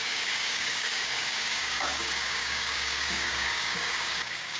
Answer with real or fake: fake